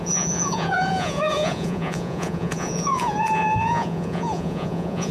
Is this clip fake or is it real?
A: fake